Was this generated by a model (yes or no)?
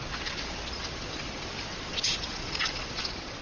yes